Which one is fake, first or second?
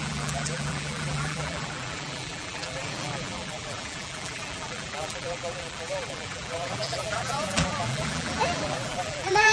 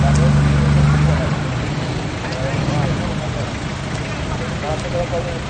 first